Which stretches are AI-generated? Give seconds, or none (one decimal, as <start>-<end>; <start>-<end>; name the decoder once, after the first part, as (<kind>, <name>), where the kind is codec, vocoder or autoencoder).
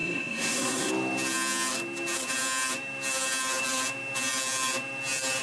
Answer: 0.0-0.9 (codec, SNAC)